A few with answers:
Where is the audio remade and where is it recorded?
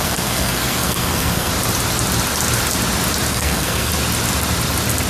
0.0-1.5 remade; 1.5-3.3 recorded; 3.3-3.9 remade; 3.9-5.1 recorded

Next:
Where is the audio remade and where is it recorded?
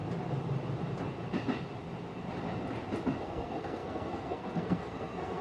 0.0-3.2 recorded; 3.2-5.4 remade